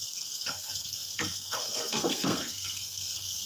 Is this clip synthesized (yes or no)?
yes